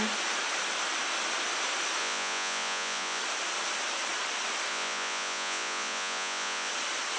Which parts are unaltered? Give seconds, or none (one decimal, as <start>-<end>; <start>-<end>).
0.0-2.0; 3.2-4.7; 6.7-7.2